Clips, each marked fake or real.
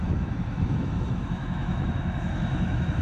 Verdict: fake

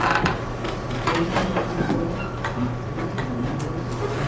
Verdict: real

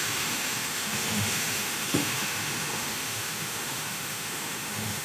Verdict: fake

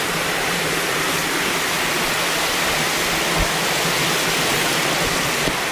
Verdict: real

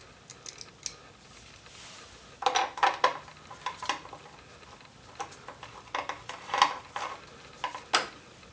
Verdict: real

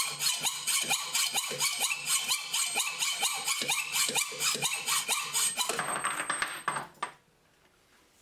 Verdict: real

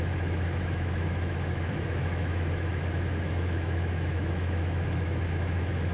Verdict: fake